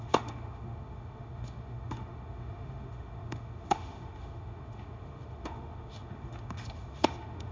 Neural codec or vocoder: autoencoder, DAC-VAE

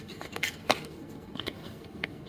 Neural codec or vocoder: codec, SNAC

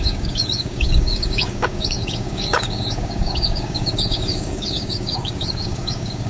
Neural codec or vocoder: codec, DAC